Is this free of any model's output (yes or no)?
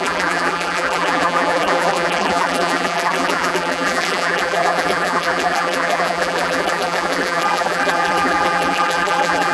no